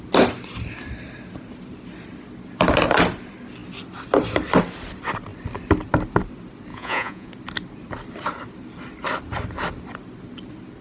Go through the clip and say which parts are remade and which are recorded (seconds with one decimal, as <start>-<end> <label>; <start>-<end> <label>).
0.0-6.7 recorded; 6.7-7.3 remade; 7.3-10.8 recorded